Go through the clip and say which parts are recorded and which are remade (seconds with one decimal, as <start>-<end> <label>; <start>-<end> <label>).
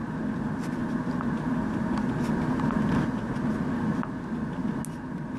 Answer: 0.0-5.4 recorded